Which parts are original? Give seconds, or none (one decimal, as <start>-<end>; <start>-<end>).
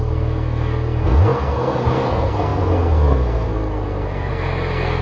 none